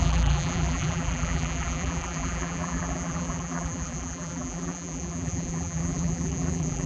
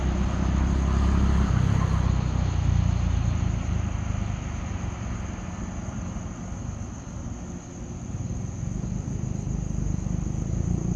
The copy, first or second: first